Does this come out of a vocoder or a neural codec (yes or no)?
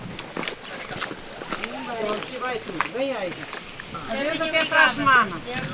no